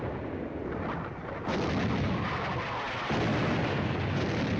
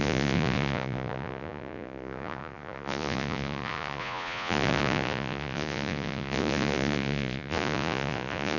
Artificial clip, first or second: second